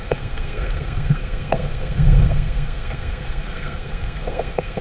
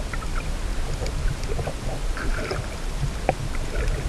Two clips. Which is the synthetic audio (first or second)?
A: first